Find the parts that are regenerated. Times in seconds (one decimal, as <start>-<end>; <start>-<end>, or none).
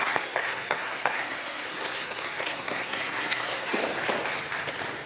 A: 0.0-3.8